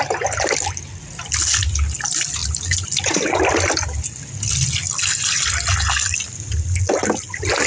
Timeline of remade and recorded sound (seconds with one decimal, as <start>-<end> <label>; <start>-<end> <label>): 0.0-7.7 recorded